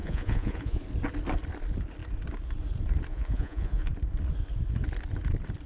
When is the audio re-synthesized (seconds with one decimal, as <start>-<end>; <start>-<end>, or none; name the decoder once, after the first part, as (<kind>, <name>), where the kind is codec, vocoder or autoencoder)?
0.0-0.8 (vocoder, Vocos); 3.1-3.9